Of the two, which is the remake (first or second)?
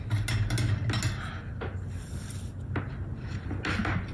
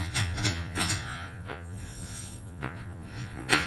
second